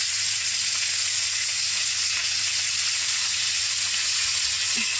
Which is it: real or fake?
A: fake